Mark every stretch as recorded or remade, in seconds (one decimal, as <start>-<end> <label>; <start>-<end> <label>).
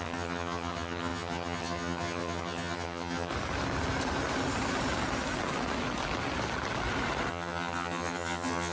0.0-3.3 remade; 3.3-7.3 recorded; 7.3-8.7 remade